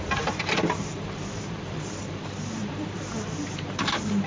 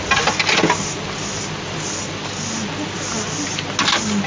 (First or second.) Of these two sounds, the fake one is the first